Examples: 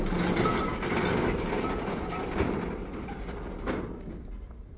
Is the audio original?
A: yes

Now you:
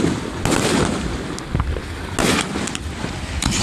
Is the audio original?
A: yes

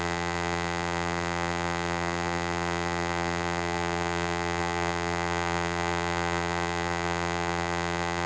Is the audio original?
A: no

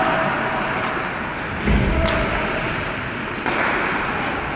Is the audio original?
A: yes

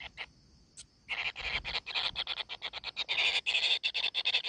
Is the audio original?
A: yes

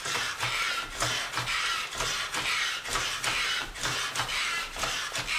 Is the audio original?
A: yes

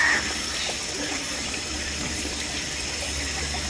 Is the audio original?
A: no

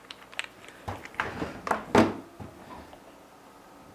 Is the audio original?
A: yes